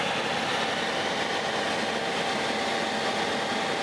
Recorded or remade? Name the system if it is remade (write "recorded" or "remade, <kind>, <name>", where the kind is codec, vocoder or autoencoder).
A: recorded